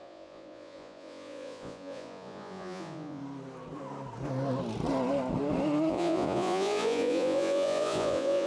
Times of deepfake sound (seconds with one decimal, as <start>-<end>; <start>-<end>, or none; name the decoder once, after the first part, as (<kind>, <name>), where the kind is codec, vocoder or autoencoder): 0.0-3.2 (vocoder, Vocos); 5.9-8.5